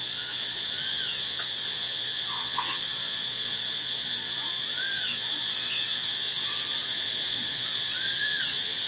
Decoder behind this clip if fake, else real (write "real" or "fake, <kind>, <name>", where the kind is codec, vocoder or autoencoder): fake, vocoder, Vocos